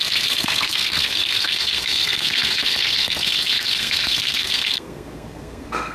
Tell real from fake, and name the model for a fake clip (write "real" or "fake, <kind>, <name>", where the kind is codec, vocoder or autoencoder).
fake, codec, SNAC